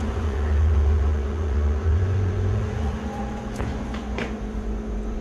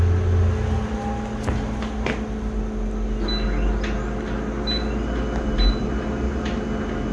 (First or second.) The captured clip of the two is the second